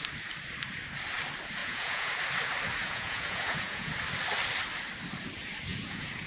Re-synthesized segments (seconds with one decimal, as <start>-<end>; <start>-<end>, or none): 1.6-2.1; 2.8-3.9; 5.7-6.3